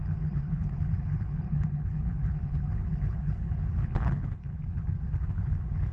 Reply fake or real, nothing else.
fake